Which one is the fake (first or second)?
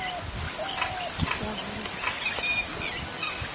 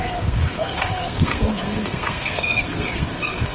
second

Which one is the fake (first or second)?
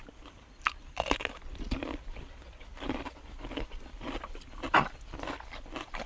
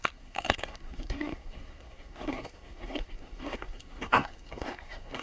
second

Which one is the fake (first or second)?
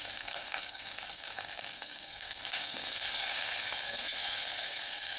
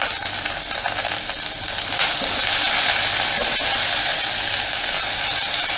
first